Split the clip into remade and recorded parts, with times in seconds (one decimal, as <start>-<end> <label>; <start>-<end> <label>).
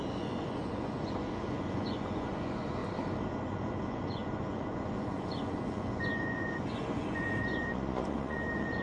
0.0-2.8 remade; 2.8-3.3 recorded; 3.3-8.8 remade